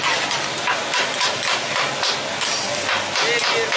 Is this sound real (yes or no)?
yes